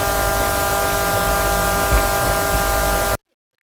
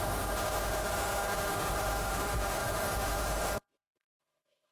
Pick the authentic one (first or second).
first